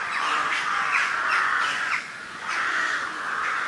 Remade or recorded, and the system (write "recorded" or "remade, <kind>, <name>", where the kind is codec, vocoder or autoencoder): remade, vocoder, Vocos